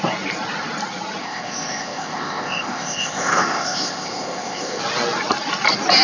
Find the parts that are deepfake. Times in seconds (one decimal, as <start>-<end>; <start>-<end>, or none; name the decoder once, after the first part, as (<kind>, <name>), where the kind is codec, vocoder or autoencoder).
1.2-4.8 (codec, ZipCodec)